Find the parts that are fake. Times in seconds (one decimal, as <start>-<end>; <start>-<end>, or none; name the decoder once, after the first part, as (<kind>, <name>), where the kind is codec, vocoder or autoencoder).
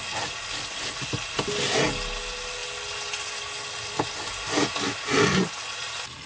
none